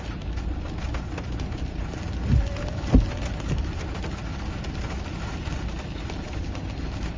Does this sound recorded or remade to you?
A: recorded